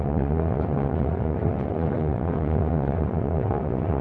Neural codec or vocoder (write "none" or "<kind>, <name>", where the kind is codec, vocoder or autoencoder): vocoder, WaveNeXt